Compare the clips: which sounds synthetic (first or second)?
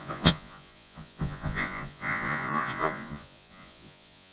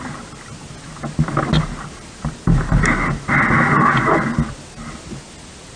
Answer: first